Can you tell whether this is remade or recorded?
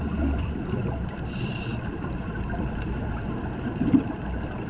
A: remade